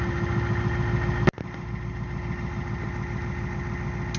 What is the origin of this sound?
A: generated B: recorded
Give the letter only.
B